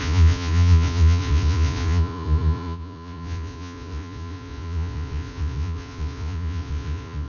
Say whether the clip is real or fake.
fake